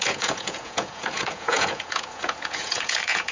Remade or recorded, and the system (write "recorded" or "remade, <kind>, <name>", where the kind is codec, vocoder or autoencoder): remade, vocoder, Vocos